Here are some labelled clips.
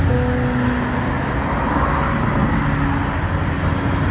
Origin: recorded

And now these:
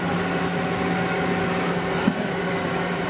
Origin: recorded